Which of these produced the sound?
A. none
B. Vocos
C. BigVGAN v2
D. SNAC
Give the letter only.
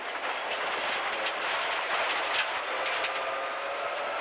A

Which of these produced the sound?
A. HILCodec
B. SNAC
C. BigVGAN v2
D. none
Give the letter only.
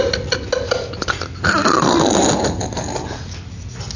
D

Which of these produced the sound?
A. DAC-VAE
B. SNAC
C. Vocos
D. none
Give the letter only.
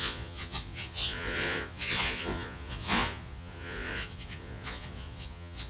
C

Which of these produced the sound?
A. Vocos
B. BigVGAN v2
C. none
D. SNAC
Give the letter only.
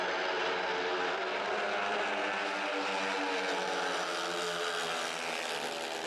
C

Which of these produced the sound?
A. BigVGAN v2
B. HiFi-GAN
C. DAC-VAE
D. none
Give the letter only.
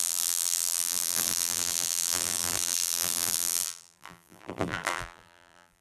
A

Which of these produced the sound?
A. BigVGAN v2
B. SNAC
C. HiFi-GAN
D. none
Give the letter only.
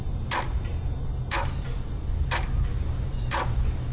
D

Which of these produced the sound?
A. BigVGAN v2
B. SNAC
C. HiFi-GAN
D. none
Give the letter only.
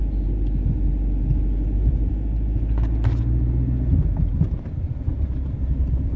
D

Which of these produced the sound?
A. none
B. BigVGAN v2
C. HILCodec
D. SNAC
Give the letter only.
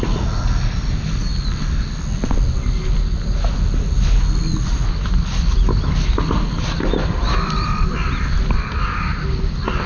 A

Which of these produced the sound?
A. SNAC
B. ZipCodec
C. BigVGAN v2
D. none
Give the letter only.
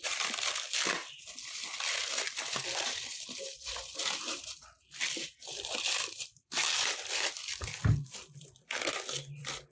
C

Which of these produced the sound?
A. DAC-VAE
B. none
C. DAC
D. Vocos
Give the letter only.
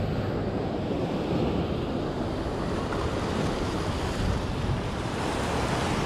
B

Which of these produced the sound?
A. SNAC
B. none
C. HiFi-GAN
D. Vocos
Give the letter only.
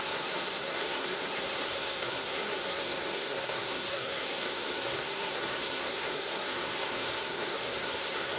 A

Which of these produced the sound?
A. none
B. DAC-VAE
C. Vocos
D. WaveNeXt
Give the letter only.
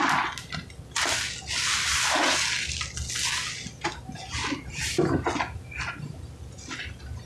A